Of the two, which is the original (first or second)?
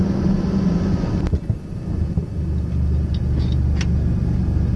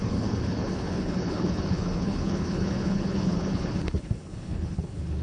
first